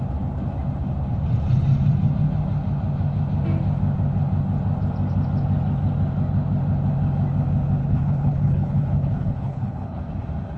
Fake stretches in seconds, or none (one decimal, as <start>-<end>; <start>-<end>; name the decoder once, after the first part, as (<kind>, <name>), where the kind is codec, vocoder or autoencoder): 7.8-10.0 (codec, HILCodec)